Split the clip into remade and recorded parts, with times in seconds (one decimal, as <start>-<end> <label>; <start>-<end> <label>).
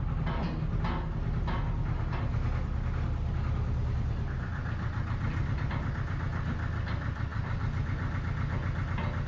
0.0-9.3 recorded